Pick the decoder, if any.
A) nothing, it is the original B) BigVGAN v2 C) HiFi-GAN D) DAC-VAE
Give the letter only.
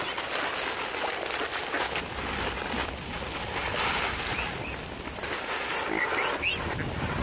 A